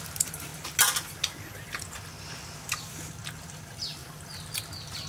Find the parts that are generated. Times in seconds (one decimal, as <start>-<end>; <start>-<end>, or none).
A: 0.0-0.5; 3.4-4.0